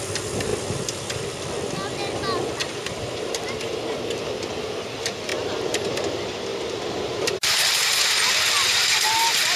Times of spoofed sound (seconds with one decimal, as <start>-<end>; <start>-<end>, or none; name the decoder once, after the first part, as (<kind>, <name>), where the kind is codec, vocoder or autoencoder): 2.6-3.7 (vocoder, BigVGAN v2)